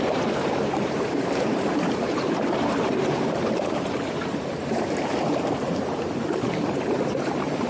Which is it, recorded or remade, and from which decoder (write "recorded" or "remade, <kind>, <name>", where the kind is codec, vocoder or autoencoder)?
remade, vocoder, BigVGAN v2